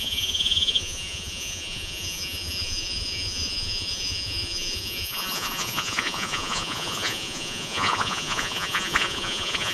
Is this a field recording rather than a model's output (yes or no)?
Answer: no